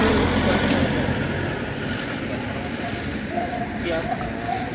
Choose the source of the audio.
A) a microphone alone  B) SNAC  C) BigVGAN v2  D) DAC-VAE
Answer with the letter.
C